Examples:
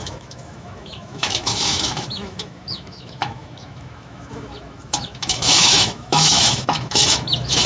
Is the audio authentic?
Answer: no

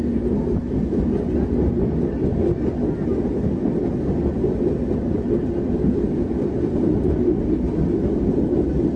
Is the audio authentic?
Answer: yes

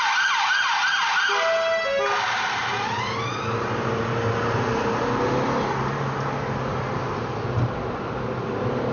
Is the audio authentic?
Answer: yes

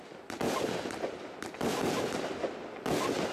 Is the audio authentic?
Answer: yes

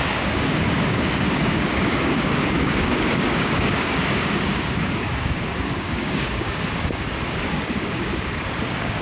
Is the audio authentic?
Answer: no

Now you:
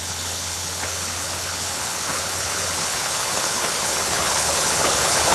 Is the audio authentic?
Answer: no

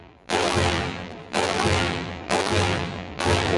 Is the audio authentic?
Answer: no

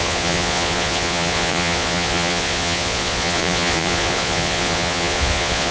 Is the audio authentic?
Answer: no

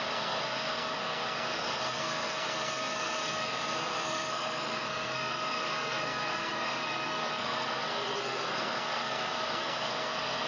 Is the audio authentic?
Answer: no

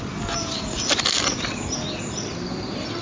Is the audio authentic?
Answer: yes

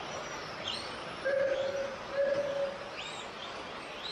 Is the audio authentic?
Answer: yes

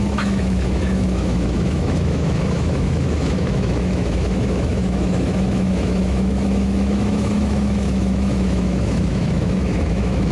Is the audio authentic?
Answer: no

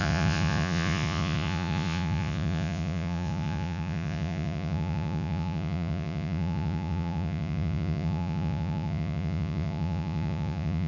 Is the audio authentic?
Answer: no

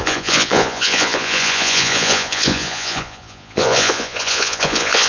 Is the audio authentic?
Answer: no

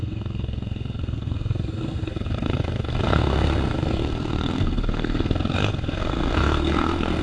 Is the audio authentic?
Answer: no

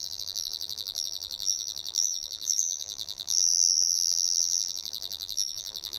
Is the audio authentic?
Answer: no